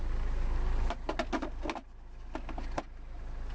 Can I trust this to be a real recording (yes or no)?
yes